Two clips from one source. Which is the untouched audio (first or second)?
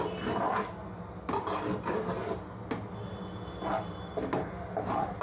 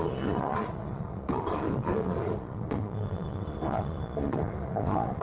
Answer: first